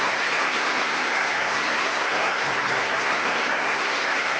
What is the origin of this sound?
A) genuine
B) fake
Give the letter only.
B